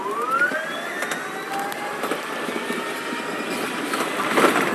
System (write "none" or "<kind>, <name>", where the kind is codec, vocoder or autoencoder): none